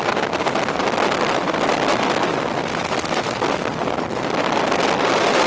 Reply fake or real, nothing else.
real